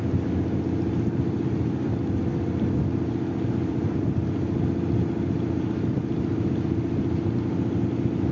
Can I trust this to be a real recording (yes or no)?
yes